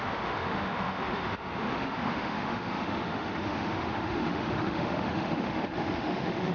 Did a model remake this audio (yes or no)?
yes